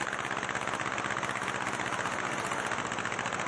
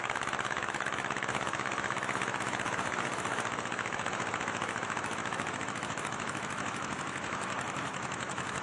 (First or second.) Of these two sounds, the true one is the first